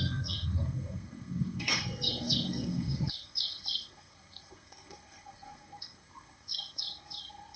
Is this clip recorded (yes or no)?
no